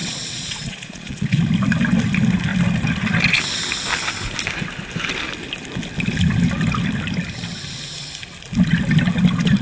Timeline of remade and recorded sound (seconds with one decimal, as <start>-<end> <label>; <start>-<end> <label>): 0.0-1.4 remade; 1.4-9.6 recorded